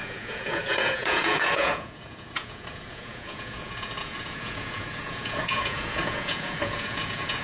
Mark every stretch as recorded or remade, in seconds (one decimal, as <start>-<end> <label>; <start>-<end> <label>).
0.0-7.4 remade